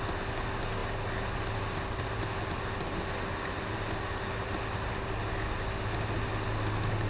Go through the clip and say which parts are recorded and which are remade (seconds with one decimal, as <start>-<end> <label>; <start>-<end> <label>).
0.0-7.1 recorded